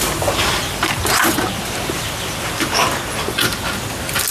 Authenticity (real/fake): real